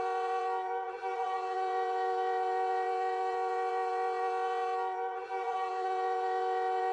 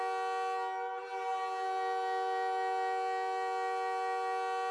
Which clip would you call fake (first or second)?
first